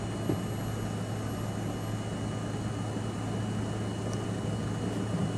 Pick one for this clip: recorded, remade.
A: recorded